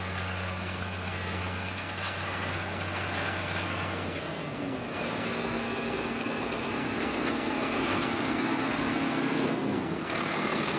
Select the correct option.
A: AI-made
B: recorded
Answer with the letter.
A